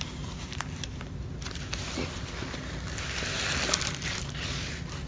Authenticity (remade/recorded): remade